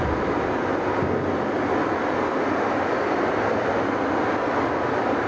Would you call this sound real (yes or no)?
yes